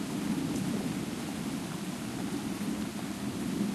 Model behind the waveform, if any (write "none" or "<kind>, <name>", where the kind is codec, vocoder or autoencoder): none